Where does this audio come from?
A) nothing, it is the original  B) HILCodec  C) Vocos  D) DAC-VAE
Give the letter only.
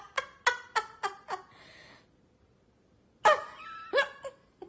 A